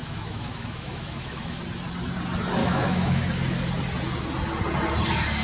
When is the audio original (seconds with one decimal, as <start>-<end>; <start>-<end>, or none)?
1.6-2.6; 3.2-5.4